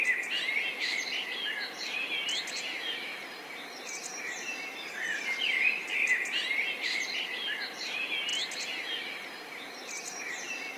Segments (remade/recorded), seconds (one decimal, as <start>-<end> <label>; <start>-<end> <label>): 0.0-10.8 recorded